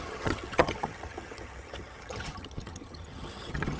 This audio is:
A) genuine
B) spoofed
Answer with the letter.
B